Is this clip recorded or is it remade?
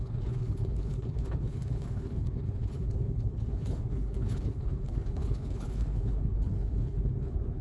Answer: remade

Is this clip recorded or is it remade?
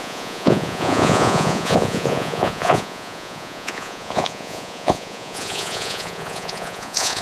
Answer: remade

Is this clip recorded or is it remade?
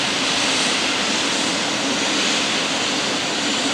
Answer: recorded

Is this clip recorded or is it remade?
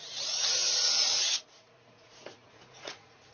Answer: remade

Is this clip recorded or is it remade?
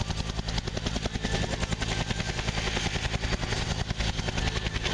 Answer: recorded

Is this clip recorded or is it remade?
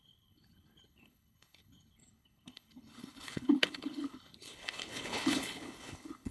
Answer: remade